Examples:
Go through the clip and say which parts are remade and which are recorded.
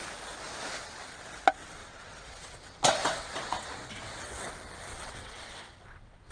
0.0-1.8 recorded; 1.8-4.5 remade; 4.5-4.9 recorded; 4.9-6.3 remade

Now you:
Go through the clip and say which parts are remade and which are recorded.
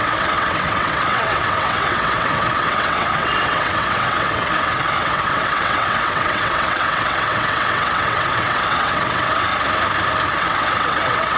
0.0-9.5 remade; 9.5-10.3 recorded; 10.3-11.4 remade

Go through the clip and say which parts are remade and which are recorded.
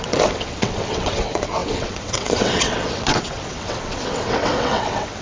0.0-5.2 remade